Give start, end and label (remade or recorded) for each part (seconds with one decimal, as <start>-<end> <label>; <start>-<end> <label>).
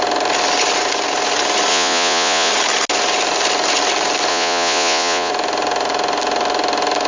0.0-1.7 recorded; 1.7-2.5 remade; 2.5-4.3 recorded; 4.3-5.3 remade; 5.3-7.1 recorded